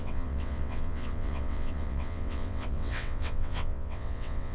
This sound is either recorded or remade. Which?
remade